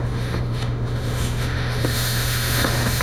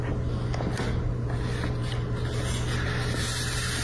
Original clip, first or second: second